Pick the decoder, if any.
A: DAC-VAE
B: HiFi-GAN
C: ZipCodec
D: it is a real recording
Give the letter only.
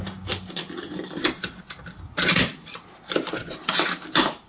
D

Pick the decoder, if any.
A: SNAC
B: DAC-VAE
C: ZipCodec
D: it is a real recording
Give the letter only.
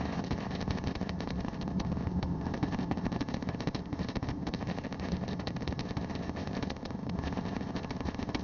C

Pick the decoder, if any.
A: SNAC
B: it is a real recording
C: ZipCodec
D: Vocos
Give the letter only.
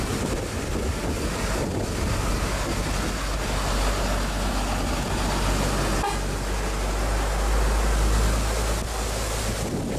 B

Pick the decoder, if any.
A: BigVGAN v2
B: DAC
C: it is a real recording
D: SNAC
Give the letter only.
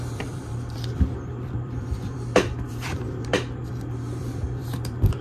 A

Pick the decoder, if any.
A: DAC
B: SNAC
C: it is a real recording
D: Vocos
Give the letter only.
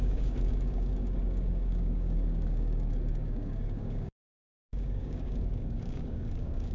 A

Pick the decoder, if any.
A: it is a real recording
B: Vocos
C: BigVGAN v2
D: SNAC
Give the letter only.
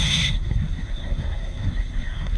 D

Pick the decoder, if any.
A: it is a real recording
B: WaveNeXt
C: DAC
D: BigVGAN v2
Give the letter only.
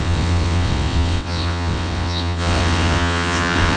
B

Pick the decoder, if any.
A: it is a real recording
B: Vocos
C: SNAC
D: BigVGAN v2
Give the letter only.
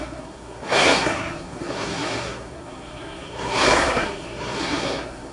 C